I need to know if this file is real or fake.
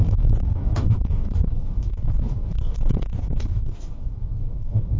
fake